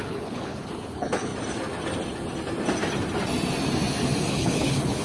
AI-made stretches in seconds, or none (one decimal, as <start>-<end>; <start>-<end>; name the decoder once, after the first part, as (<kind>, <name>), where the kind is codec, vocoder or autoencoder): 0.0-1.3 (codec, HILCodec); 4.3-5.0

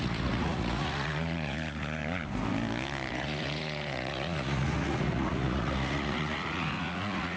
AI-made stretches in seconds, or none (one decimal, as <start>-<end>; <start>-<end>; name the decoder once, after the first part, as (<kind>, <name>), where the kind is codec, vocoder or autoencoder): 0.0-2.0 (vocoder, Vocos); 3.1-7.4

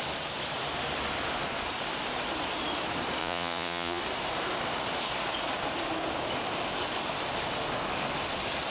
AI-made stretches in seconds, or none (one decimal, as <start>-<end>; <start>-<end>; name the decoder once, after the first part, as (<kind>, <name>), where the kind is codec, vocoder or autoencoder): 3.2-4.0 (vocoder, Vocos)

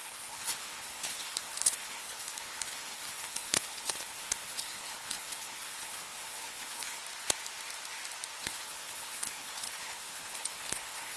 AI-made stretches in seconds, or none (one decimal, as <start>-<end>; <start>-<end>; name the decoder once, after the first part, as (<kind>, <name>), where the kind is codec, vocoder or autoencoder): 0.0-7.0 (codec, HILCodec); 8.4-11.2

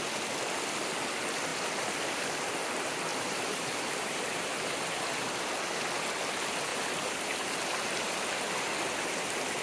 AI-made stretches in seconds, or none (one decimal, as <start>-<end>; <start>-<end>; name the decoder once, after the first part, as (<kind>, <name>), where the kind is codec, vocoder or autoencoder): 3.1-4.5 (vocoder, BigVGAN v2)

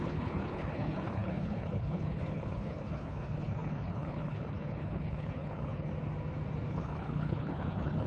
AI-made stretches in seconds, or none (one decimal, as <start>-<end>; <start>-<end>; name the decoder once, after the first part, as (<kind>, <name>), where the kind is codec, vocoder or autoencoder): 0.0-5.9 (codec, HILCodec); 6.7-8.1

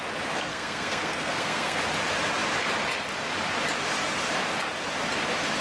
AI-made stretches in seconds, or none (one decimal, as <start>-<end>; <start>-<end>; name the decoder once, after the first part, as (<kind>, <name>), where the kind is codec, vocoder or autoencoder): 0.5-1.8 (codec, SNAC)

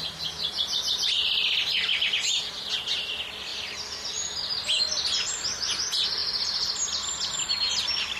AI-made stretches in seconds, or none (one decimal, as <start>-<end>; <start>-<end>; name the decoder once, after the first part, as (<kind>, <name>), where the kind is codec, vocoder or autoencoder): none